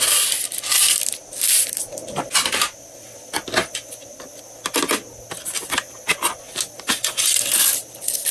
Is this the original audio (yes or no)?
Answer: yes